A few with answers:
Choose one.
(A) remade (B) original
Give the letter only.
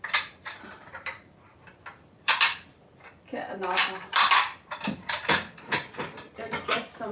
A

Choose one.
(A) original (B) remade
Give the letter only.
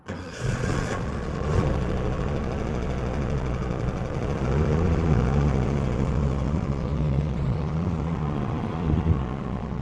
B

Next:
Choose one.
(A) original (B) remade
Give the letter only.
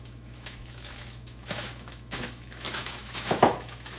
B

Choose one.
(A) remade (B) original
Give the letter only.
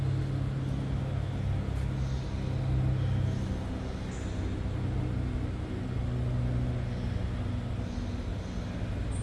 B